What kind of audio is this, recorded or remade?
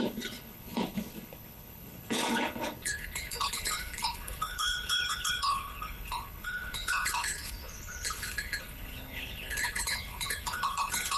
remade